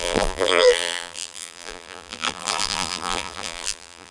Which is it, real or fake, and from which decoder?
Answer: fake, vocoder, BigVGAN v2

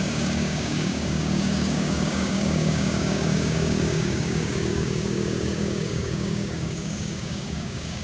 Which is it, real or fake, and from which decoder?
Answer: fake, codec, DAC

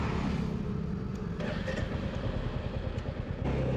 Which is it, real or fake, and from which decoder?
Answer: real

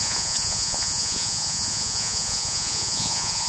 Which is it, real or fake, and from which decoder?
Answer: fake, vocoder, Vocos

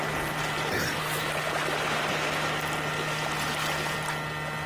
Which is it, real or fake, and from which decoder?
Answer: real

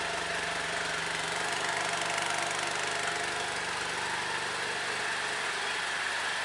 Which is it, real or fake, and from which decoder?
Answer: real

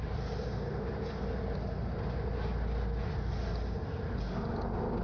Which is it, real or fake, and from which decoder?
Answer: real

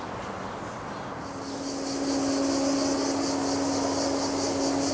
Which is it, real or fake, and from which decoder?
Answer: real